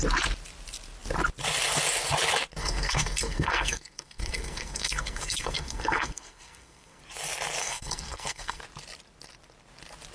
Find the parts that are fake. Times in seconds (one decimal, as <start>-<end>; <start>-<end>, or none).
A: 2.6-7.0; 7.6-8.6